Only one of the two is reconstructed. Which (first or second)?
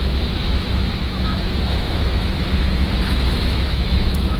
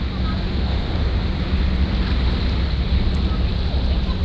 first